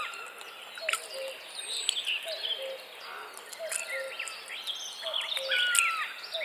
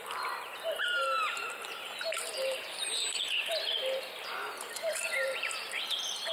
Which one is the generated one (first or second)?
second